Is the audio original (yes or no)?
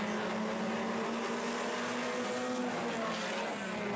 yes